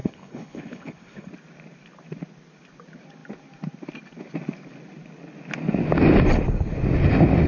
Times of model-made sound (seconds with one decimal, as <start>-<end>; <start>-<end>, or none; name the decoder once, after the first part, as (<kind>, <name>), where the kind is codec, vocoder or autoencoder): 0.0-1.3 (codec, HILCodec)